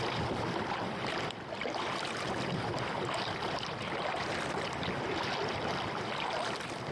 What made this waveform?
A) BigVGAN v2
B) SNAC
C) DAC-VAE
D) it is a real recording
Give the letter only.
D